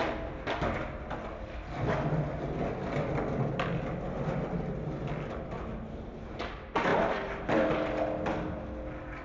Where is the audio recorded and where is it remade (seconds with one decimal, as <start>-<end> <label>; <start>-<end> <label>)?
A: 0.0-9.2 recorded